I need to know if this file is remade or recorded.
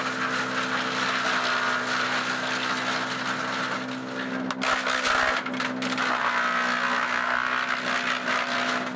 recorded